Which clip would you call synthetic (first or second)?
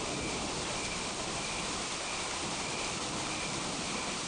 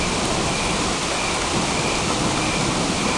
first